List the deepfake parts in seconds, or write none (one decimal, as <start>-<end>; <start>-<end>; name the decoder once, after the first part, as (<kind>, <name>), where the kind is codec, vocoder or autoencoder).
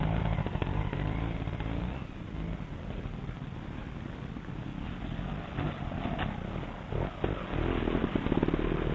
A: 3.8-4.6 (vocoder, BigVGAN v2)